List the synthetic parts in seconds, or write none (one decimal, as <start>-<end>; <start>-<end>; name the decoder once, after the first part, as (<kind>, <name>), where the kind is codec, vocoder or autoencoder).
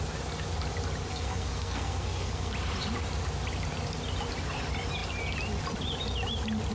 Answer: 1.1-2.5 (codec, SNAC)